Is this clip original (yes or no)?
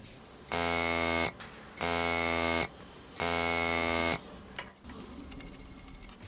yes